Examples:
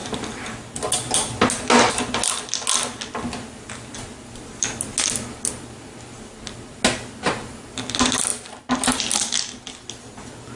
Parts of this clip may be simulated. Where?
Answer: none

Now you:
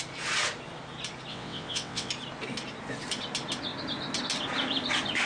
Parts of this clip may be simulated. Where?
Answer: 1.3-2.1 (vocoder, WaveNeXt)

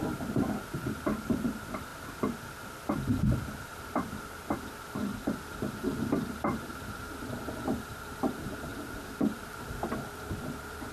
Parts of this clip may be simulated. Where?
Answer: 0.0-1.9 (vocoder, BigVGAN v2); 2.8-10.9

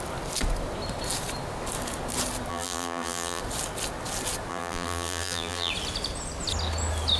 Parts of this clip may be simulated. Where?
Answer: 2.5-3.4 (vocoder, BigVGAN v2); 4.5-5.7

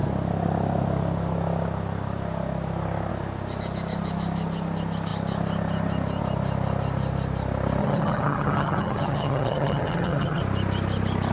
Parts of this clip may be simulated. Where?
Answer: 7.8-10.4 (vocoder, HiFi-GAN)

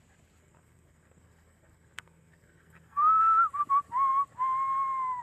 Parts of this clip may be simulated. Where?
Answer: 0.4-3.2 (codec, SNAC)